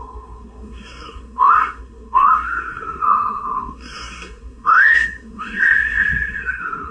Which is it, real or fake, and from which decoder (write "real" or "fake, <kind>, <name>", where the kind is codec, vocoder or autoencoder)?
fake, codec, SNAC